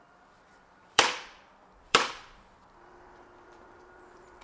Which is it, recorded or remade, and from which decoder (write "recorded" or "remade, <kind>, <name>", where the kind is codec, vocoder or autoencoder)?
remade, vocoder, BigVGAN v2